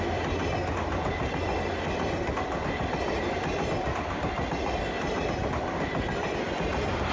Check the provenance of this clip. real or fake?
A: real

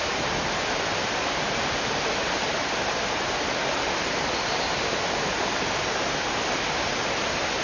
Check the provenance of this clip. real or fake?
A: real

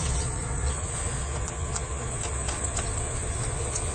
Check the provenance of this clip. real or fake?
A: fake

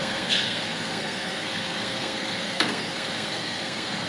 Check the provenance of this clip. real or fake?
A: fake